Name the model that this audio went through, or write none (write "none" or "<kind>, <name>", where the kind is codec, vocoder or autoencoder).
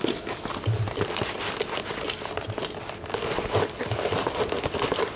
vocoder, BigVGAN v2